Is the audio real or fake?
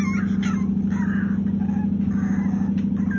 real